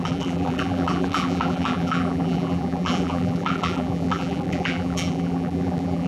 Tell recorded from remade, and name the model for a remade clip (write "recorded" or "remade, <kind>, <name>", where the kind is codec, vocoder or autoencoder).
remade, vocoder, BigVGAN v2